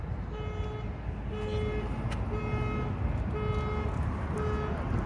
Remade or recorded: recorded